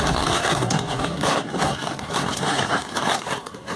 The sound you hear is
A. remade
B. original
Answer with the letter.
A